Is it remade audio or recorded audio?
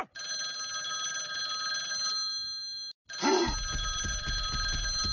recorded